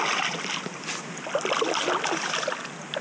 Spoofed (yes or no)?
no